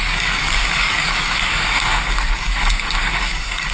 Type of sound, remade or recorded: remade